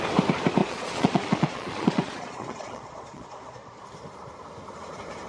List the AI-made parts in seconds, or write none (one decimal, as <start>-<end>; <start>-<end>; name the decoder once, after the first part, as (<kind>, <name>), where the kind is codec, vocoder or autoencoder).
0.6-3.8 (vocoder, Vocos)